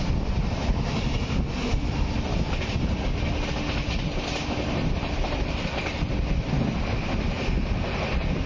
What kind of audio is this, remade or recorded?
recorded